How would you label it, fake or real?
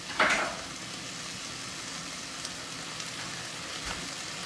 real